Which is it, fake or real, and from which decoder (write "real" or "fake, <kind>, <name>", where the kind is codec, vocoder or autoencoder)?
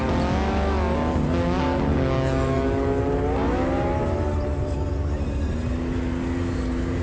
real